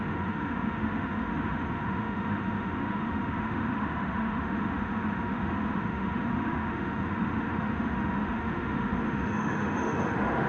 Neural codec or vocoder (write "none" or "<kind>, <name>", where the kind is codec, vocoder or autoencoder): autoencoder, DAC-VAE